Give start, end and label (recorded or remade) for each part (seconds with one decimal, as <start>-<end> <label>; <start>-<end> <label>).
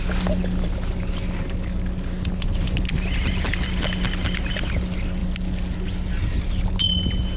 0.0-7.4 recorded